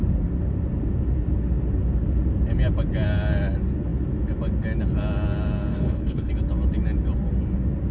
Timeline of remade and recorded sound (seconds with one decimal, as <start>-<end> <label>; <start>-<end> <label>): 0.0-5.7 recorded; 5.7-6.3 remade; 6.3-7.9 recorded